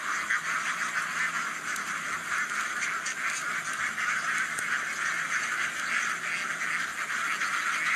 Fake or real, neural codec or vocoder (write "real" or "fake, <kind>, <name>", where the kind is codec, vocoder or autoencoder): real